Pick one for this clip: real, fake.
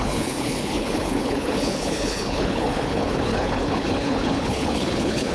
fake